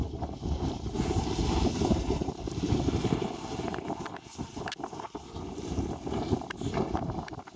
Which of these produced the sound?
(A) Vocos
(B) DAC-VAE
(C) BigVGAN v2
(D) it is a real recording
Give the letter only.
C